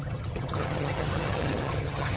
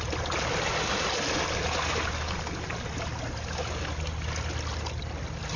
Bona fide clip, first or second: second